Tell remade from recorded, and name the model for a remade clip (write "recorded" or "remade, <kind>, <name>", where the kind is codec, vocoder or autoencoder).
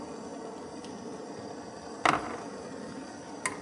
recorded